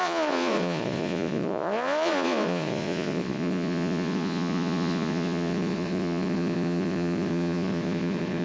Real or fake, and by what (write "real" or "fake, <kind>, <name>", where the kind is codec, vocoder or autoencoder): fake, vocoder, Vocos